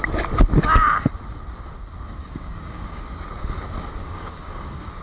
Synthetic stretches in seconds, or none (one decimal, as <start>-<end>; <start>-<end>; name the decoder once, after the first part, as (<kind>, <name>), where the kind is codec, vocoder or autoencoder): 2.2-3.0 (codec, DAC); 4.0-5.0